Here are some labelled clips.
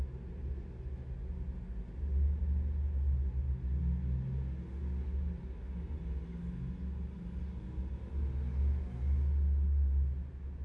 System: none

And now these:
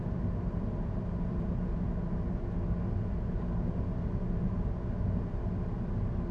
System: none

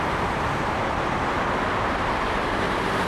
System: vocoder, BigVGAN v2